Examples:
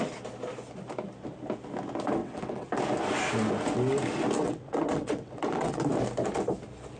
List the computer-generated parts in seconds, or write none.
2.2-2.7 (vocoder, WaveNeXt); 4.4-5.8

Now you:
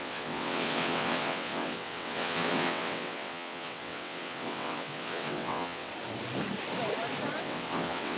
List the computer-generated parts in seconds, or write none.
0.0-5.9 (vocoder, WaveNeXt); 7.4-8.2

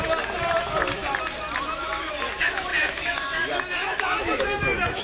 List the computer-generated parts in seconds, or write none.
0.0-1.0 (autoencoder, DAC-VAE); 1.6-5.0